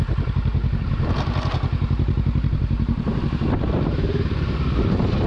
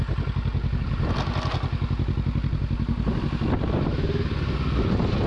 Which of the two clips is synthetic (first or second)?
first